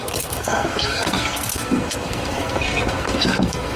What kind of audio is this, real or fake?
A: fake